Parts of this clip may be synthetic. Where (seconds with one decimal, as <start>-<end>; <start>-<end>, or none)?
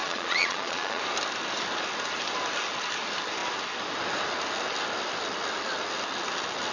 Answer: 0.0-1.0